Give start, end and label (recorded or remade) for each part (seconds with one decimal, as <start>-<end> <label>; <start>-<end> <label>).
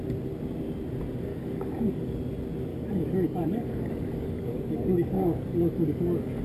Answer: 0.0-1.3 recorded; 1.3-2.2 remade; 2.2-2.7 recorded; 2.7-6.4 remade